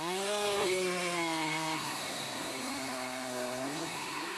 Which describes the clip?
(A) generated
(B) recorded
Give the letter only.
A